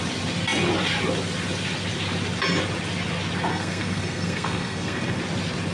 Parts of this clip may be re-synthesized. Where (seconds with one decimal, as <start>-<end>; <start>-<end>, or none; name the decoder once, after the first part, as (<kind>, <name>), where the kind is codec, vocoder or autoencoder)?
3.5-5.2 (codec, SNAC)